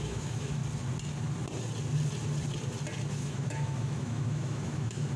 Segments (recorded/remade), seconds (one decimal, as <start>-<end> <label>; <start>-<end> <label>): 0.0-0.6 remade; 0.6-3.1 recorded; 3.1-5.2 remade

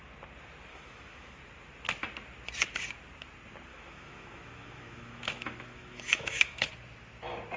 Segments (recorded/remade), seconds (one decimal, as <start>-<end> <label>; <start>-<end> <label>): 0.0-0.7 recorded; 0.7-1.4 remade; 1.4-3.7 recorded; 3.7-6.7 remade; 6.7-7.6 recorded

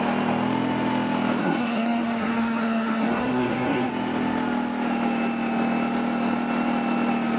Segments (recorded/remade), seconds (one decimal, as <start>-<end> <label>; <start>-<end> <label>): 0.0-1.4 recorded; 1.4-3.9 remade; 3.9-7.4 recorded

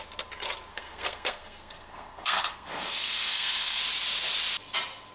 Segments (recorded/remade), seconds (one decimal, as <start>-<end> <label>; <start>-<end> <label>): 0.0-0.7 recorded; 0.7-3.8 remade; 3.8-5.1 recorded

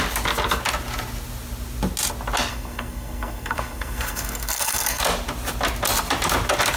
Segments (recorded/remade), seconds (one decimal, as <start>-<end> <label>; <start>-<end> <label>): 0.0-2.5 recorded; 2.5-5.0 remade; 5.0-6.8 recorded

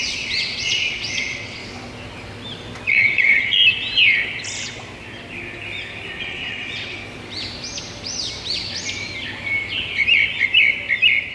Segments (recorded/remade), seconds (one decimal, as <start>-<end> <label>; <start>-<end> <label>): 0.0-1.6 remade; 1.6-2.9 recorded; 2.9-3.6 remade; 3.6-6.2 recorded; 6.2-7.0 remade; 7.0-11.3 recorded

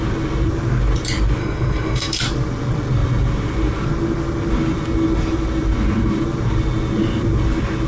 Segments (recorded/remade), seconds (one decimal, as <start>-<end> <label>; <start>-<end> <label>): 0.0-1.4 recorded; 1.4-2.2 remade; 2.2-7.9 recorded

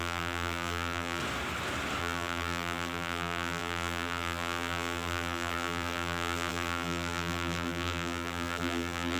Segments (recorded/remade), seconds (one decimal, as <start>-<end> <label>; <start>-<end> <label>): 0.0-1.2 remade; 1.2-2.0 recorded; 2.0-9.2 remade